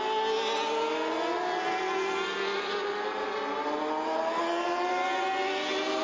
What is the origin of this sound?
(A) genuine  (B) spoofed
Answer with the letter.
A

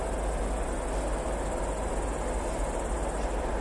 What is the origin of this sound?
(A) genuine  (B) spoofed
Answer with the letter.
A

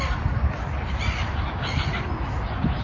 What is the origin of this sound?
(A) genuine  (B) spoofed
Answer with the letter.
A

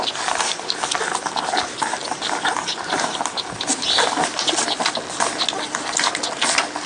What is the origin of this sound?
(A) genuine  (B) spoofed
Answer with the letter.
A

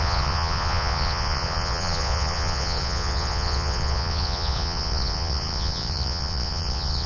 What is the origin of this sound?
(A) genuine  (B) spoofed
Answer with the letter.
B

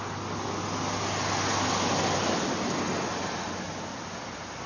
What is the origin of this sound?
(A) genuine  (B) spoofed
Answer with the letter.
A